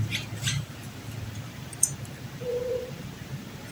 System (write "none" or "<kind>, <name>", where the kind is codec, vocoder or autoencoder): vocoder, BigVGAN v2